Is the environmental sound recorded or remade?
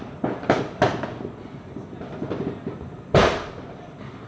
recorded